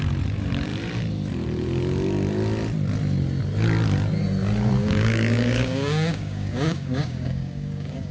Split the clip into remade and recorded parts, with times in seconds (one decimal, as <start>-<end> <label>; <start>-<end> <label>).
0.0-4.8 recorded; 4.8-8.1 remade